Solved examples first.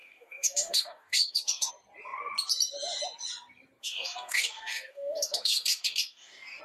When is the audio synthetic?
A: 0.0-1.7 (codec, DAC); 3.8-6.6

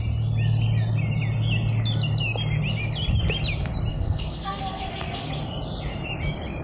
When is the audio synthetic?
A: 3.9-5.3 (codec, SNAC)

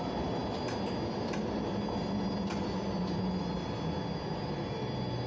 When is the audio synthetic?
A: none

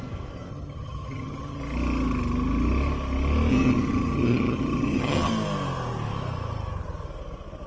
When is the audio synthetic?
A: 0.5-1.6 (vocoder, HiFi-GAN); 3.5-5.3

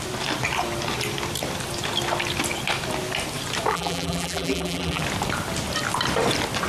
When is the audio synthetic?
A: 3.7-5.0 (vocoder, BigVGAN v2)

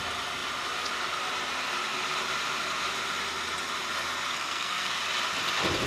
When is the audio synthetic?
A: 4.3-5.0 (codec, SNAC)

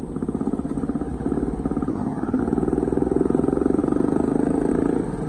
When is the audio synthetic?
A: 1.9-2.4 (codec, SNAC)